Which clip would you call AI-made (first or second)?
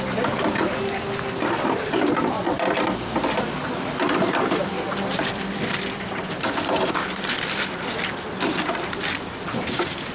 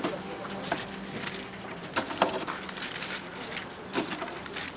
first